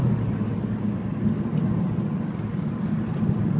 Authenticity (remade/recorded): recorded